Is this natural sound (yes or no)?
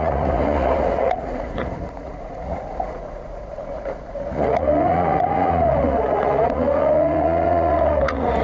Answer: no